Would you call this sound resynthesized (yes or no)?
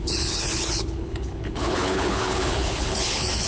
yes